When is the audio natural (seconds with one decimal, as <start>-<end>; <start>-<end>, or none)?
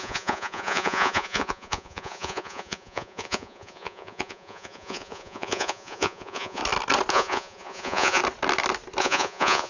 6.6-7.1; 8.2-9.0